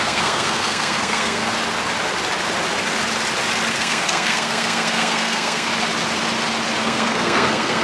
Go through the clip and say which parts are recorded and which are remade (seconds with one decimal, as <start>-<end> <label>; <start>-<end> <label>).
0.0-1.5 remade; 1.5-3.7 recorded; 3.7-5.7 remade; 5.7-6.8 recorded; 6.8-7.8 remade